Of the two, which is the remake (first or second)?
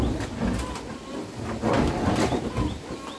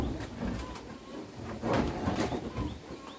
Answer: second